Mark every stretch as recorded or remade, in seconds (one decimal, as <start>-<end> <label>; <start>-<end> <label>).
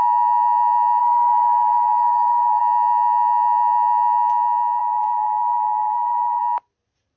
0.0-1.0 recorded; 1.0-2.6 remade; 2.6-4.8 recorded; 4.8-6.4 remade; 6.4-7.2 recorded